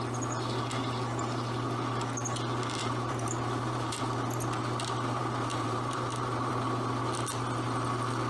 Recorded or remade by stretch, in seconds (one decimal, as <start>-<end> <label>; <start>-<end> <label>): 0.0-2.8 recorded; 2.8-4.0 remade; 4.0-5.2 recorded; 5.2-6.5 remade; 6.5-8.3 recorded